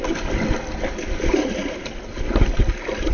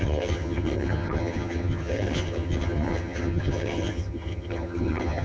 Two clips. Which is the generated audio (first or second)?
second